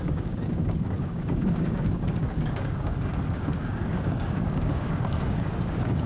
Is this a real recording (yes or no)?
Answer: no